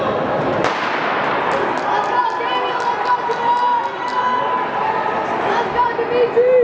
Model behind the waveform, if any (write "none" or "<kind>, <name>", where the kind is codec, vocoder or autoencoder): none